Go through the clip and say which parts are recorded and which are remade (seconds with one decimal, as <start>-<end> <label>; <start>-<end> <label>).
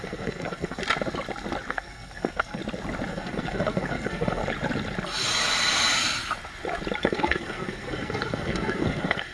0.0-0.8 remade; 0.8-1.7 recorded; 1.7-2.6 remade; 2.6-3.1 recorded; 3.1-4.4 remade; 4.4-7.0 recorded; 7.0-9.3 remade